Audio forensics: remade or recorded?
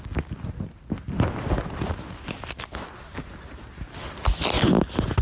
recorded